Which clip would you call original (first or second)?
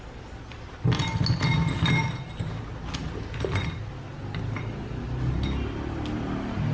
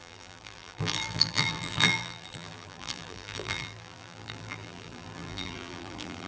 first